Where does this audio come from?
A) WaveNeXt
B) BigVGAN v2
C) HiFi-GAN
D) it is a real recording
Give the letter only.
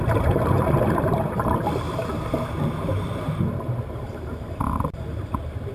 B